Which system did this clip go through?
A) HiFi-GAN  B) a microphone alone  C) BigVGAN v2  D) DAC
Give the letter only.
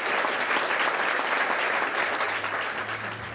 B